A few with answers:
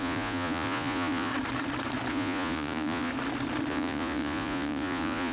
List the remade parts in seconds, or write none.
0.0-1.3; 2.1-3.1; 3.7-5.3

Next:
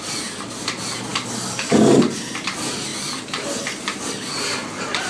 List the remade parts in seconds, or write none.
0.0-1.1; 2.4-2.9